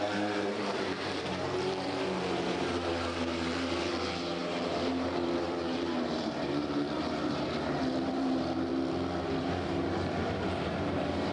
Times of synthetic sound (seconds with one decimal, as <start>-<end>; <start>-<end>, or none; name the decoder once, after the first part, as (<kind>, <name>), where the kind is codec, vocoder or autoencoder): 0.0-8.7 (vocoder, BigVGAN v2); 9.4-11.3